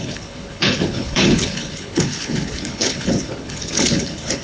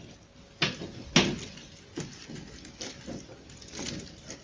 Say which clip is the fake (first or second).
first